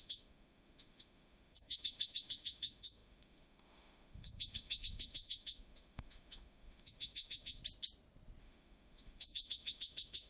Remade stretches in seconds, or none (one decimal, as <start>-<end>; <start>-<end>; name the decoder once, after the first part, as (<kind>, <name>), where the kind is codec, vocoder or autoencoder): 0.0-7.6 (autoencoder, DAC-VAE); 8.4-10.3